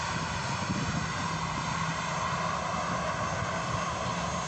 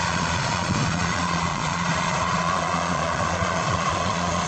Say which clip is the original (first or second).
first